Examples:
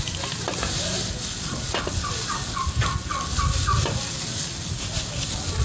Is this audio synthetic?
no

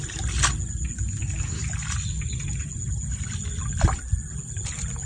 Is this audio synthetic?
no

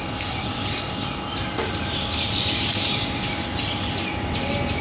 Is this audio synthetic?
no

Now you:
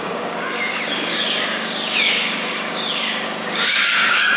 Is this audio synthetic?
yes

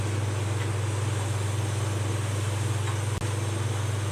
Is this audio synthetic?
no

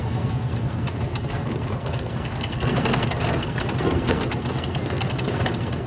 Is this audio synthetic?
yes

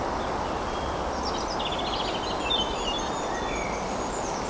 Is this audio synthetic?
no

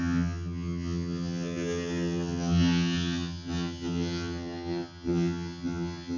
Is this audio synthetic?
yes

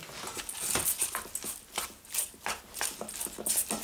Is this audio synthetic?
no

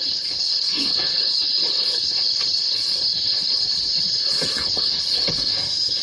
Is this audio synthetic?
yes